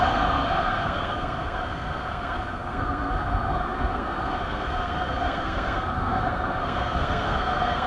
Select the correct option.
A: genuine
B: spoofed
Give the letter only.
B